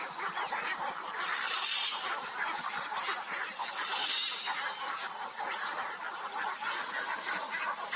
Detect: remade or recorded recorded